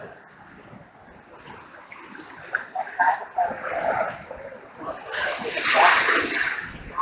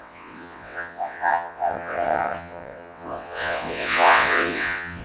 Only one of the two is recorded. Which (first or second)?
first